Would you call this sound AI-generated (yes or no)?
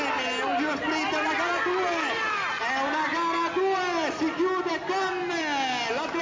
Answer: no